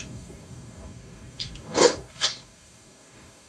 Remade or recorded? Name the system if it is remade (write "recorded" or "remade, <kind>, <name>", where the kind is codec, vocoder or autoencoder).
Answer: remade, codec, DAC